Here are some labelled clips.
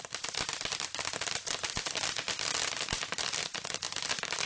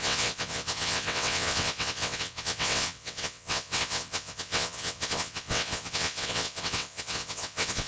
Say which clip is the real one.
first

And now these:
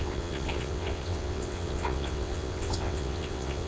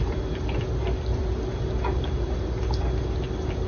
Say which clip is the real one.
second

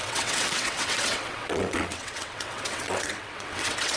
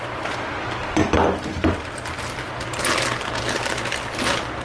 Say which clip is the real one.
second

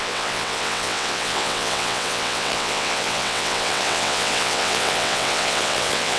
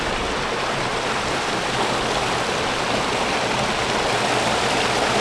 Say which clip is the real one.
second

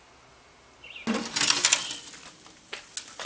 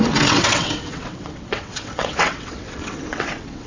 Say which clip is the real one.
first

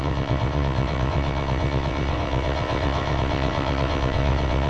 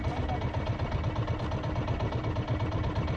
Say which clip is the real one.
second